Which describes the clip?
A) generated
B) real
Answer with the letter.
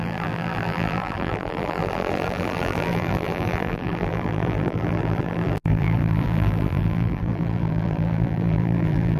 A